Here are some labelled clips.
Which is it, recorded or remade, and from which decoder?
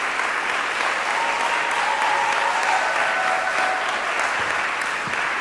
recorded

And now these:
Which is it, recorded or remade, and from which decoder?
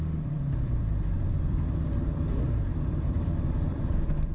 remade, vocoder, BigVGAN v2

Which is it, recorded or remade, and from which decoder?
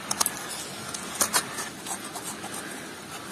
recorded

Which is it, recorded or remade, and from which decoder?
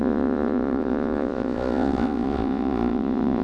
remade, vocoder, Vocos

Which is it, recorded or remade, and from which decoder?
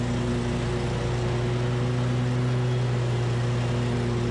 recorded